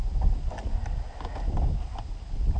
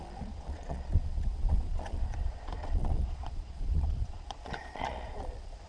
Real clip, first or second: first